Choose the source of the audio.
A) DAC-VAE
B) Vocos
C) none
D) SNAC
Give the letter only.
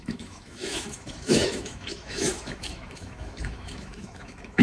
A